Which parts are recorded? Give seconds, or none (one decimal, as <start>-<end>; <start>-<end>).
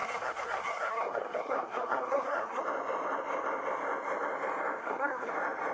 2.6-4.8; 5.3-5.7